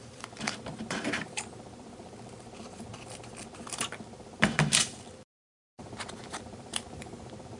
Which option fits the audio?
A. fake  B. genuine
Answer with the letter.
A